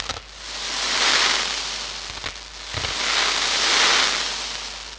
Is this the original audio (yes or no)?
yes